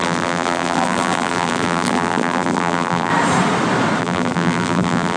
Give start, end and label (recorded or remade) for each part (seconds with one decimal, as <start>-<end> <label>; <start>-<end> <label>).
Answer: 0.0-3.1 remade; 3.1-4.0 recorded; 4.0-5.2 remade

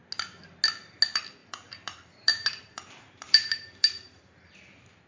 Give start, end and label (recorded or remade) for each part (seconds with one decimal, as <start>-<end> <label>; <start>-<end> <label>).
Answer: 0.0-1.4 recorded; 1.4-4.5 remade; 4.5-5.1 recorded

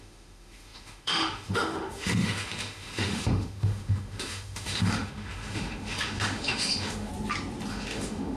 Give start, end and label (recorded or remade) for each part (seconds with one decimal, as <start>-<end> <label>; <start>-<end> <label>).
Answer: 0.0-7.1 remade; 7.1-7.7 recorded; 7.7-8.4 remade

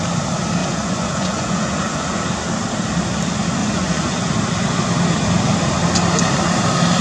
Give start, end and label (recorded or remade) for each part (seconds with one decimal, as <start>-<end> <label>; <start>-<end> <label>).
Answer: 0.0-0.6 recorded; 0.6-2.2 remade; 2.2-3.6 recorded; 3.6-4.3 remade; 4.3-7.0 recorded

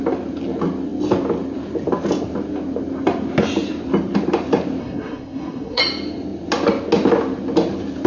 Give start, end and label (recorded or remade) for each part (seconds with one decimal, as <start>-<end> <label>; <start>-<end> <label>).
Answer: 0.0-4.8 recorded; 4.8-5.8 remade; 5.8-8.1 recorded

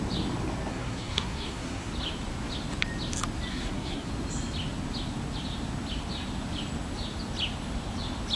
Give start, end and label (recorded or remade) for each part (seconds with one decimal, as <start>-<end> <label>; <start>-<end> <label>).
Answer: 0.0-0.7 recorded; 0.7-1.9 remade; 1.9-3.5 recorded; 3.5-4.1 remade; 4.1-8.4 recorded

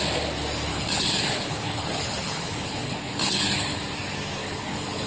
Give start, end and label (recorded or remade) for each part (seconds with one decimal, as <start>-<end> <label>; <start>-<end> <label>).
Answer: 0.0-0.7 recorded; 0.7-3.8 remade; 3.8-4.4 recorded; 4.4-5.1 remade

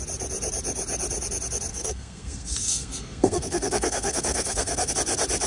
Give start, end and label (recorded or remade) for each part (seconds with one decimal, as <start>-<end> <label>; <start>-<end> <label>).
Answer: 0.0-1.7 recorded; 1.7-4.9 remade; 4.9-5.5 recorded